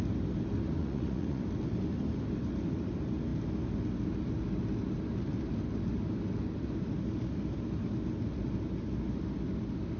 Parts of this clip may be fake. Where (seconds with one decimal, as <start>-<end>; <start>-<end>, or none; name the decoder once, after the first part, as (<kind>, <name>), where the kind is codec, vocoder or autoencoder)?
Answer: 0.8-1.4 (vocoder, Vocos)